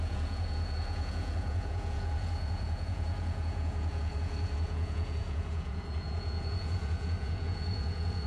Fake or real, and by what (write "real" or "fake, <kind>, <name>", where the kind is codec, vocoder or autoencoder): fake, vocoder, Vocos